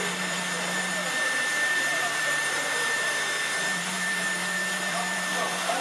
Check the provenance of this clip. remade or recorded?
remade